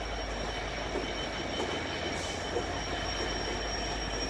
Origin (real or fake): real